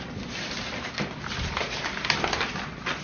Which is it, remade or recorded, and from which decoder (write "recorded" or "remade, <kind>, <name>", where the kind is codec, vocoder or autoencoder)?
recorded